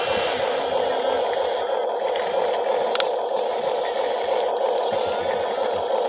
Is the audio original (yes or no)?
yes